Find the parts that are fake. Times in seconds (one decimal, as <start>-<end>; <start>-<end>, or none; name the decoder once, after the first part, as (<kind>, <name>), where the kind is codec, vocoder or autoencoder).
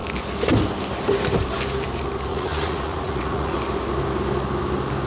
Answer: 2.3-3.6 (vocoder, Vocos)